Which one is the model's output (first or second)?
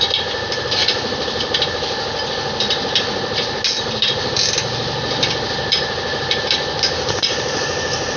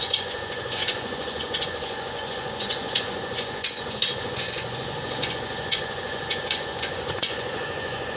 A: second